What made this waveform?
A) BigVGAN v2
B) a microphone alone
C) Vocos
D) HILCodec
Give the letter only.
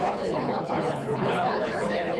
D